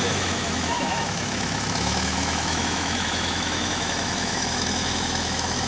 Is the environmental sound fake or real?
fake